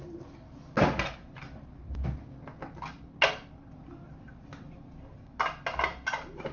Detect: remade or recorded recorded